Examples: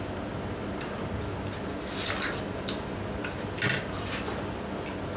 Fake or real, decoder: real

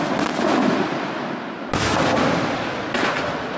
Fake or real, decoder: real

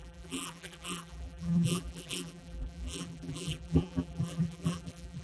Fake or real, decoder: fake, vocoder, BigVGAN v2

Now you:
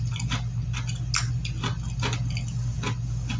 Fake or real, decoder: real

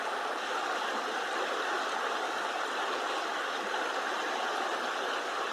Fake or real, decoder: real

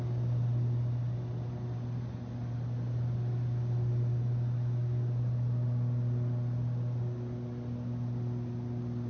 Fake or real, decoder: real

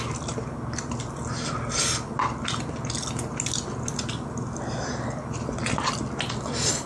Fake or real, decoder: real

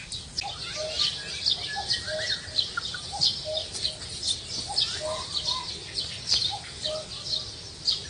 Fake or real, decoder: real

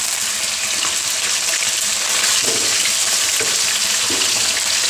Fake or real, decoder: real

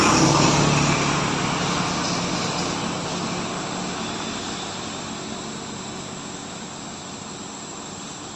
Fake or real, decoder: real